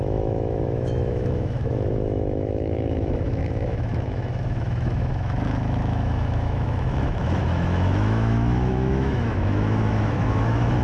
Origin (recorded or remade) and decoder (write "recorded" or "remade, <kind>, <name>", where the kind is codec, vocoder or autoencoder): remade, autoencoder, DAC-VAE